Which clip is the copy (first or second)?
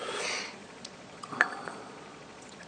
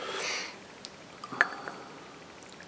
first